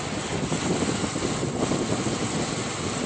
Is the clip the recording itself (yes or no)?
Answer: yes